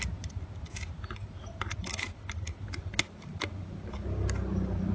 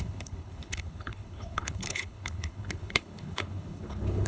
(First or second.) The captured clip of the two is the first